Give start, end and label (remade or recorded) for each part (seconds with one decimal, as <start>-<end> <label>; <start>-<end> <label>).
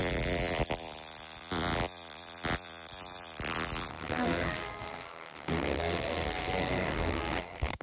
0.0-3.9 recorded; 3.9-7.8 remade